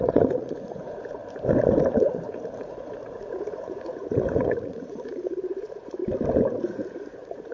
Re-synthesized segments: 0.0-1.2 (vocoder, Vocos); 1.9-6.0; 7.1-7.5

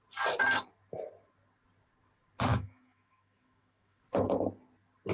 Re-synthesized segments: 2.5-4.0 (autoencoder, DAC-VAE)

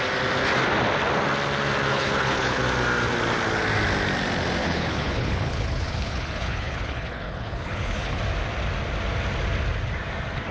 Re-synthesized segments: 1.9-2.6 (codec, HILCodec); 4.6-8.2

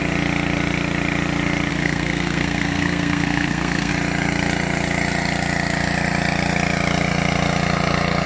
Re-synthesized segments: 1.7-3.9 (codec, SNAC)